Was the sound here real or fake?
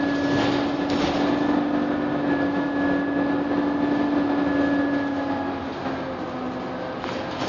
real